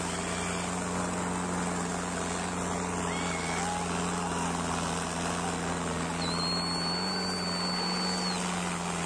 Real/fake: real